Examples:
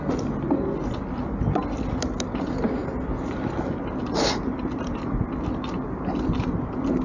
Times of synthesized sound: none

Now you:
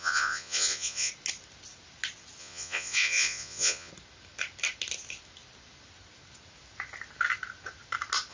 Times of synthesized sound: 0.0-1.1 (vocoder, Vocos); 2.4-3.9